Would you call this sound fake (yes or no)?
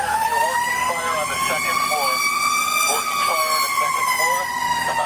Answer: no